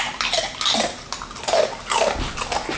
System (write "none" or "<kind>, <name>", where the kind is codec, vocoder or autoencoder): none